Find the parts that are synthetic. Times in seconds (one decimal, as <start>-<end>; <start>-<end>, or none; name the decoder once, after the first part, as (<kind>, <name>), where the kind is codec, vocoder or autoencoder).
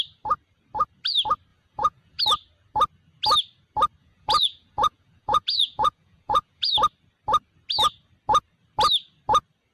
1.5-2.2 (vocoder, Vocos); 4.0-6.7